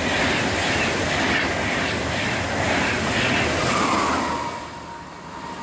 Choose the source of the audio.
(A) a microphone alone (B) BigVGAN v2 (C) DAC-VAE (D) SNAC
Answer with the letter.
A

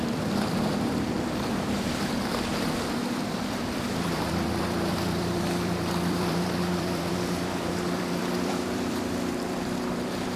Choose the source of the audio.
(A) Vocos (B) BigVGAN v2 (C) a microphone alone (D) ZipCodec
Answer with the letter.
B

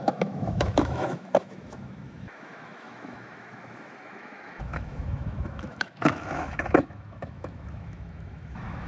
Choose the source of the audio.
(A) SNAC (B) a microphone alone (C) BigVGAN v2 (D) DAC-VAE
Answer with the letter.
D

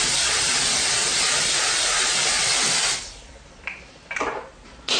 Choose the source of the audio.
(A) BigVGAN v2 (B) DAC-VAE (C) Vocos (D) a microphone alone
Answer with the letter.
A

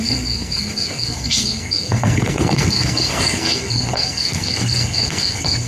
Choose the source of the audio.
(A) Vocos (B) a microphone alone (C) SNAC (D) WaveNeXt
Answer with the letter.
C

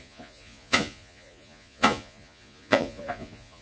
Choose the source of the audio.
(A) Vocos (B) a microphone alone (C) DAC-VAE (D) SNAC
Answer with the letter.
A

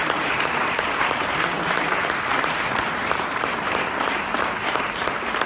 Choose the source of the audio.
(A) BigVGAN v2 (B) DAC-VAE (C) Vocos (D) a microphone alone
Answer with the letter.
A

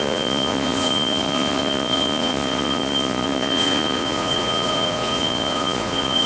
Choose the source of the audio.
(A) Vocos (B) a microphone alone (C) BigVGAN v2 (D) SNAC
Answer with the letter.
A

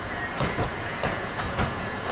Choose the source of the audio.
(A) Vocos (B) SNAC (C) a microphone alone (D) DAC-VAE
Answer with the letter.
A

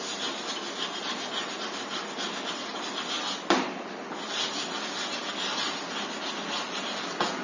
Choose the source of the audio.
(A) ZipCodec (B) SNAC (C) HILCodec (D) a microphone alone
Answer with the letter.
D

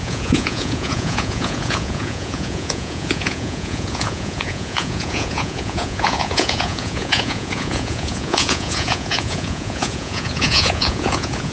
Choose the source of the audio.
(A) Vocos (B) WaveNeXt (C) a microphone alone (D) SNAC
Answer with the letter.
A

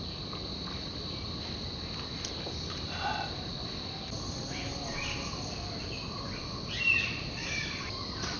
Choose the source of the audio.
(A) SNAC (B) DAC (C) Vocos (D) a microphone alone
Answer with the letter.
D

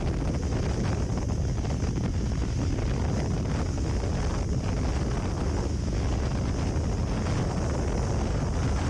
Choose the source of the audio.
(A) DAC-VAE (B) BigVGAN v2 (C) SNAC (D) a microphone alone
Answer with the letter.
D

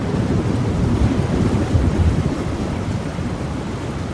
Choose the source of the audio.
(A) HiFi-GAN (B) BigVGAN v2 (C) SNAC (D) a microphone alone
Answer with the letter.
D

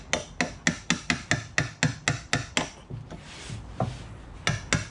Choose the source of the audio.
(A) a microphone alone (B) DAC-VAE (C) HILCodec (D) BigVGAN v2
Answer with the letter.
A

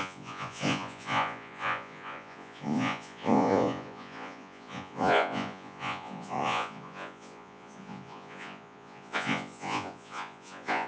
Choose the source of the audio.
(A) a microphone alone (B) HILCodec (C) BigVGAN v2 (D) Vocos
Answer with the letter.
D